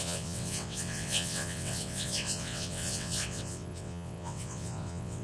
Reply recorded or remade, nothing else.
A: remade